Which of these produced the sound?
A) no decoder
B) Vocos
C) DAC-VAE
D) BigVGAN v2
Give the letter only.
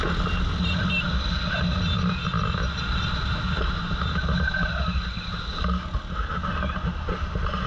A